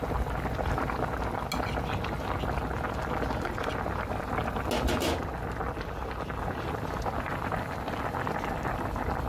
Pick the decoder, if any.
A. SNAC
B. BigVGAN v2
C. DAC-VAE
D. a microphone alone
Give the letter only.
D